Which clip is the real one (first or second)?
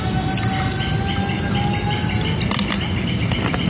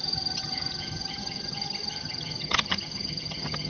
first